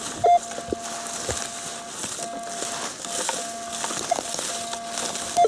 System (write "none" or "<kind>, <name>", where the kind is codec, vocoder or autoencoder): none